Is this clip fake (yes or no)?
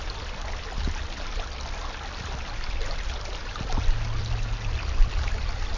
no